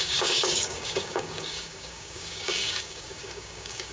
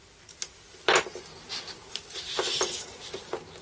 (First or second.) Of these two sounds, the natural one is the second